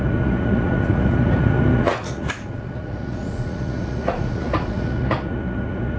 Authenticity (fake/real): fake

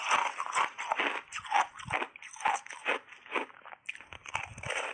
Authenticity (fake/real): real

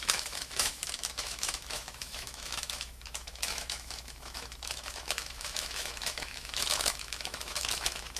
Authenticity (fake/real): fake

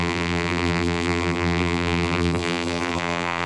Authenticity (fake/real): fake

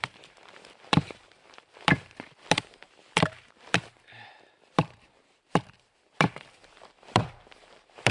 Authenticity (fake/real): fake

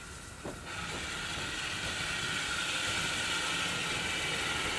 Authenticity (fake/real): real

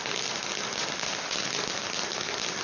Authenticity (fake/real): real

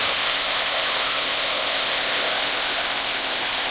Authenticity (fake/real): fake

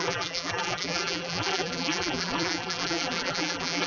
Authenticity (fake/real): fake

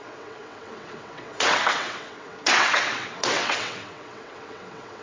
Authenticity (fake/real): fake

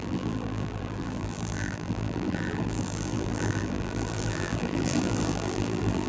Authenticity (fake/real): fake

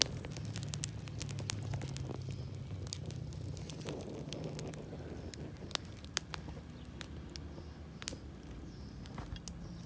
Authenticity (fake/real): real